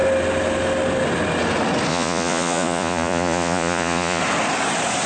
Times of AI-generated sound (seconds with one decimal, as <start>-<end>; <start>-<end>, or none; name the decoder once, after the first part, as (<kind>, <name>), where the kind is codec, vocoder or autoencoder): 1.9-4.2 (vocoder, Vocos)